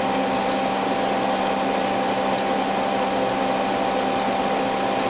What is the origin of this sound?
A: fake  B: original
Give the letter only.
B